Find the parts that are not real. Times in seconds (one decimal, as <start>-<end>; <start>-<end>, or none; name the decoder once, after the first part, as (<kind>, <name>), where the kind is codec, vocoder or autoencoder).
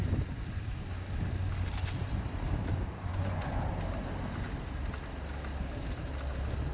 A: 3.1-3.7 (vocoder, Vocos)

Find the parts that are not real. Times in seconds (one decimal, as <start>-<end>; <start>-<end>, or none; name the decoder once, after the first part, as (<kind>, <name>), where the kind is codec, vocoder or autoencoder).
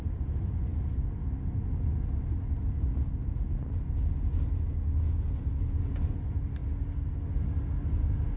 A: none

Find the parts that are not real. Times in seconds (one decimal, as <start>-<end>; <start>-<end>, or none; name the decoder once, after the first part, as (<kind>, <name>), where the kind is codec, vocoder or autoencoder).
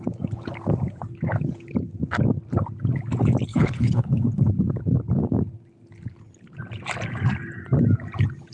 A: 3.5-4.5 (codec, HILCodec)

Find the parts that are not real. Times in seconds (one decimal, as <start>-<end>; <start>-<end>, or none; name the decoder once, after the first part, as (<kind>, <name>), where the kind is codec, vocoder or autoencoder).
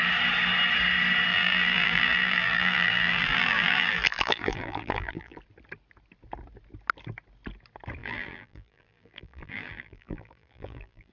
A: 1.3-5.4 (vocoder, BigVGAN v2); 8.0-11.1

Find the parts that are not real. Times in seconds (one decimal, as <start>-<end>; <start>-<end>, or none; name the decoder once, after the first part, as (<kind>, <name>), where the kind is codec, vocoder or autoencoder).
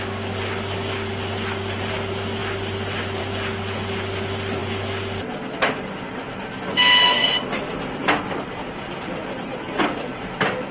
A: none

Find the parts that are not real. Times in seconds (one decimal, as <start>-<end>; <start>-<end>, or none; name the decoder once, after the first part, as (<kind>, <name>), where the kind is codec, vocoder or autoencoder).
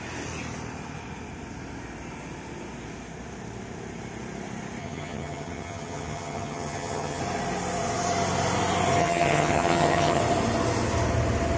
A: 4.8-7.2 (vocoder, HiFi-GAN); 9.0-10.2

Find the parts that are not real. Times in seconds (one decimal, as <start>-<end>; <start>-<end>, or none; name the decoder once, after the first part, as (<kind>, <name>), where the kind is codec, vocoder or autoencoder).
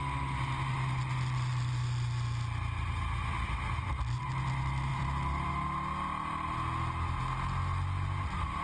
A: 4.9-5.5 (vocoder, BigVGAN v2)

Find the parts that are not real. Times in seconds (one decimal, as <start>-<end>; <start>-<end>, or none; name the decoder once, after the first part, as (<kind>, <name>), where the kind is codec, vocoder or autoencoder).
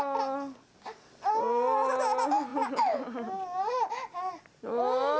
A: none